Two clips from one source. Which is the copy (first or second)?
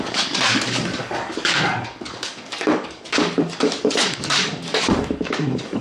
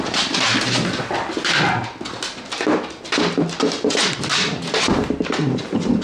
first